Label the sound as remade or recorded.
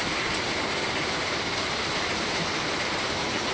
recorded